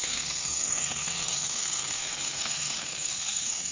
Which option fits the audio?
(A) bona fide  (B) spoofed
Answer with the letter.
B